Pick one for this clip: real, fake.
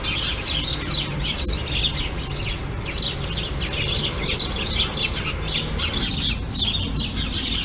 real